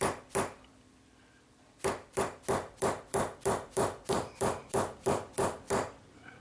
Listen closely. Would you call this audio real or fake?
fake